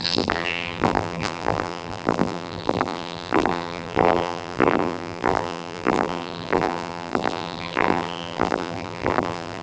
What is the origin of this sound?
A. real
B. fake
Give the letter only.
B